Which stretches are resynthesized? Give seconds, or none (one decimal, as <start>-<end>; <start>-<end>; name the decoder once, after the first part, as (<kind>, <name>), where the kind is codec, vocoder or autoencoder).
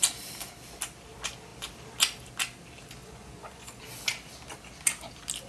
3.0-3.8 (vocoder, Vocos)